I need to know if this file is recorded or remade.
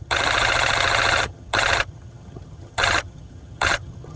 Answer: remade